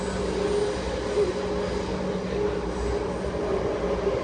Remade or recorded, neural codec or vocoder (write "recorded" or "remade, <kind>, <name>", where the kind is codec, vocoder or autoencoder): recorded